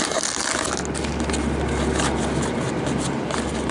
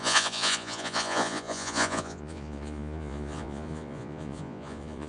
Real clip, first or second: first